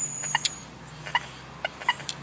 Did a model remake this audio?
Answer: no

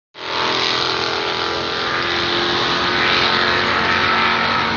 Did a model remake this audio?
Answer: no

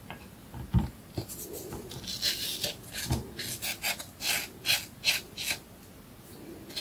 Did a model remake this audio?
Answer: no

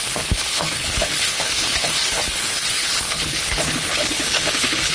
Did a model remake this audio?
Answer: yes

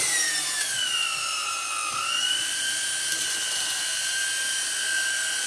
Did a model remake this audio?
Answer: yes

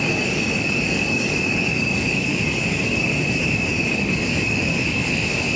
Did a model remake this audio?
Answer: yes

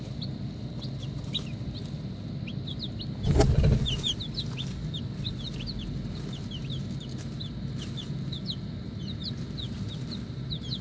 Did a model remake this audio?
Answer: no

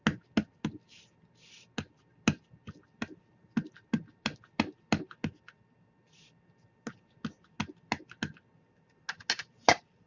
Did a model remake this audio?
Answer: no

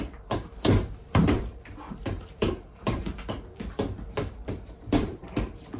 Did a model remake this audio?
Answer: yes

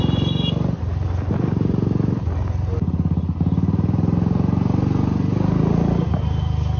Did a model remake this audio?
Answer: no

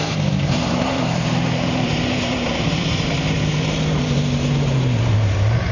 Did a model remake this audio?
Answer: yes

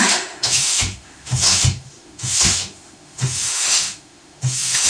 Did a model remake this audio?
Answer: yes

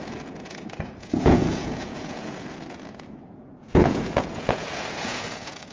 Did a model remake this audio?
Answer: yes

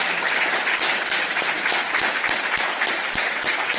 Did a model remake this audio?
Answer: no